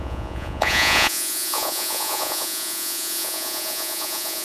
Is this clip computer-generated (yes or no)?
yes